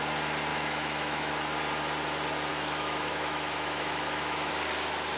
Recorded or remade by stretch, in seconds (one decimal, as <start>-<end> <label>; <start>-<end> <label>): 0.0-0.5 recorded; 0.5-1.3 remade; 1.3-2.5 recorded; 2.5-4.5 remade; 4.5-5.2 recorded